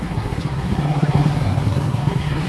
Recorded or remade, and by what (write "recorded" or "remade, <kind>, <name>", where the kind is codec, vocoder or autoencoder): remade, codec, SNAC